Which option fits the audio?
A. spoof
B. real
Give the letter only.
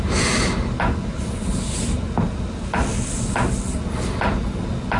B